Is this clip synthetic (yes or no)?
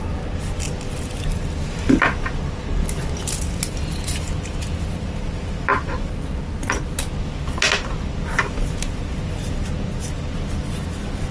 no